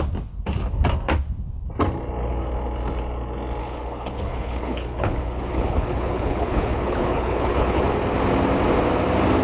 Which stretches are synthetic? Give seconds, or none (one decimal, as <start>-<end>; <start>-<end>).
3.6-7.8